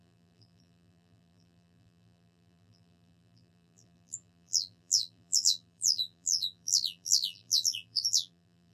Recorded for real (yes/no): no